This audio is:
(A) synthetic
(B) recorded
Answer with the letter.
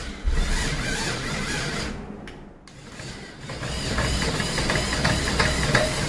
B